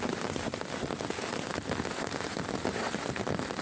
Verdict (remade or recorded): recorded